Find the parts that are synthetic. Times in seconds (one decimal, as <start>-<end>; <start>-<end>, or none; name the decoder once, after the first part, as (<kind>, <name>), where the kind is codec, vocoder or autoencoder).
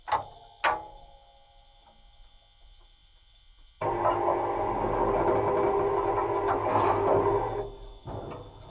none